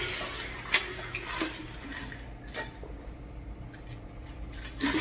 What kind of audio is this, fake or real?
real